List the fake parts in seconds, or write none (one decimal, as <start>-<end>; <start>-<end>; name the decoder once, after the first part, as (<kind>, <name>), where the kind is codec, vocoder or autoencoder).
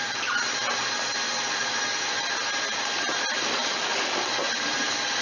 none